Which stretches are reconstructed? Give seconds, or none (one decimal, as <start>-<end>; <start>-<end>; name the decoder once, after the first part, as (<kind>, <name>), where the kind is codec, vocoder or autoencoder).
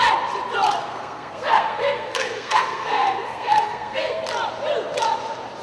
0.8-4.2 (codec, SNAC)